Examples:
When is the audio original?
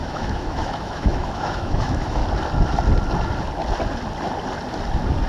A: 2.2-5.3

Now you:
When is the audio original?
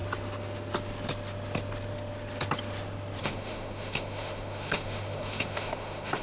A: 0.0-3.2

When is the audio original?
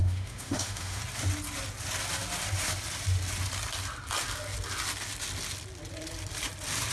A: 1.0-6.9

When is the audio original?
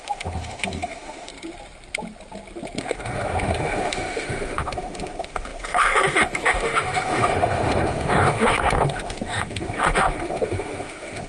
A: 1.3-2.8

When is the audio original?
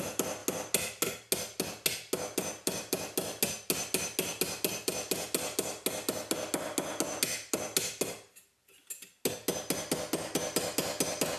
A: 0.0-11.4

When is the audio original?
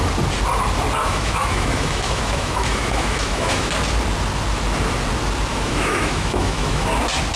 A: 0.0-1.0; 3.7-5.5; 6.9-7.4